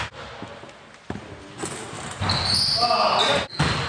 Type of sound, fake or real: real